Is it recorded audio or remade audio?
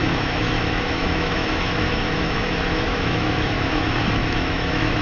remade